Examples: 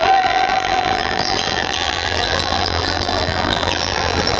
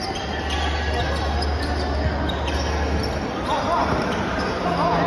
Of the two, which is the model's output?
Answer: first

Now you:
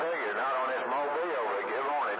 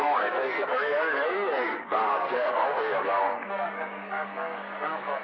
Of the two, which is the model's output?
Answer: second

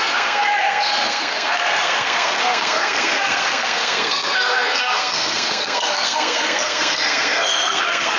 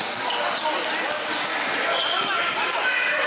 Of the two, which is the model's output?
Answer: first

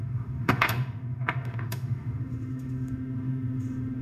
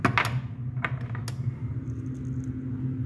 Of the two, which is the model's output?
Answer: first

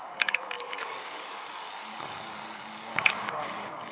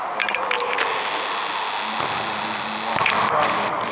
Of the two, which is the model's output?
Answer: first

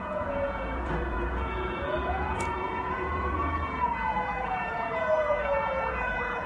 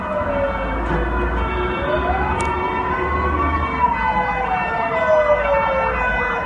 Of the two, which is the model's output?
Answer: first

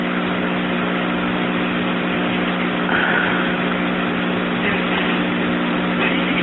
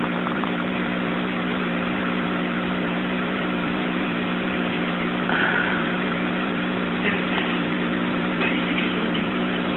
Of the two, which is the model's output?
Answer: second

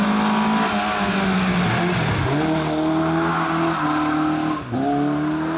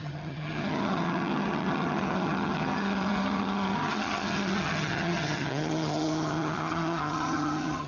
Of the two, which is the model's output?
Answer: second